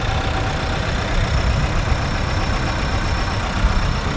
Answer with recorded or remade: recorded